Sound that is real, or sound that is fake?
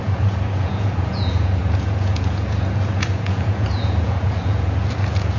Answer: fake